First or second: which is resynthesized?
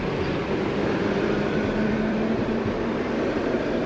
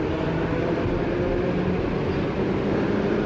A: first